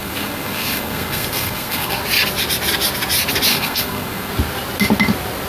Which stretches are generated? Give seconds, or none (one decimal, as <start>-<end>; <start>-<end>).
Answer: 0.0-2.0; 3.5-4.3

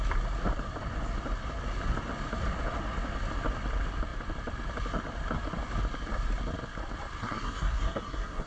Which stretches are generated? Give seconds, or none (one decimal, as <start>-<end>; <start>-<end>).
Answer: 7.2-8.5

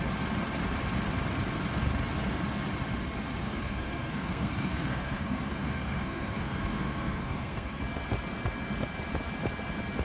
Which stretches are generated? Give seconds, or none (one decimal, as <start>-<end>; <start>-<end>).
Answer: 3.4-7.8

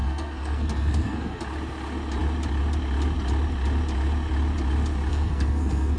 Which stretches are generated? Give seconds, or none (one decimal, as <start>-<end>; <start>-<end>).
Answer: 0.0-1.4; 5.1-6.0

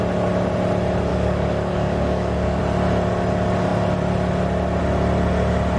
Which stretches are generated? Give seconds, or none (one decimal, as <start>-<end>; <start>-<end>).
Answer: 1.1-2.6

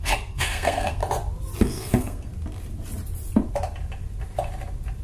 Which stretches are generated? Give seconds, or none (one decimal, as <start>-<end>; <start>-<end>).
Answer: 0.0-1.0; 1.6-2.3

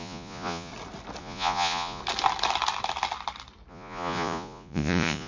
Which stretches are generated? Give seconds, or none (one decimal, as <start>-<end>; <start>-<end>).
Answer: 0.0-0.7; 1.2-2.0; 3.7-5.3

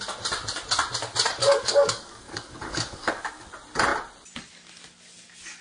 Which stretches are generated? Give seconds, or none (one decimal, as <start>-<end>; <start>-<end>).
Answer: 1.4-3.5